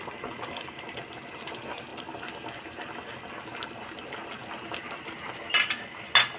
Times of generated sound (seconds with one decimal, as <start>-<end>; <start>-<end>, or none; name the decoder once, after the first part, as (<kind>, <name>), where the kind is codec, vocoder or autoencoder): none